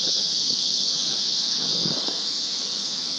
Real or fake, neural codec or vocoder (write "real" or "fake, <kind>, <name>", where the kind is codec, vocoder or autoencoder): fake, codec, SNAC